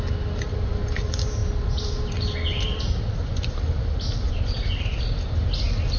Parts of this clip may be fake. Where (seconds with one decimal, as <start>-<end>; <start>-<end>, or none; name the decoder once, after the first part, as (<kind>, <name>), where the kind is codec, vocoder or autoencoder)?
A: none